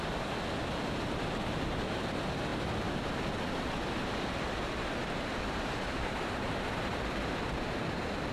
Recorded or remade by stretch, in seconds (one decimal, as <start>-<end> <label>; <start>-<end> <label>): 0.0-5.3 recorded; 5.3-6.8 remade; 6.8-8.3 recorded